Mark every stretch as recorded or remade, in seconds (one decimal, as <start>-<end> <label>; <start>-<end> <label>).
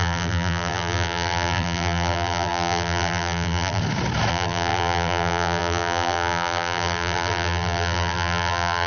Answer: 0.0-3.8 remade; 3.8-4.3 recorded; 4.3-8.9 remade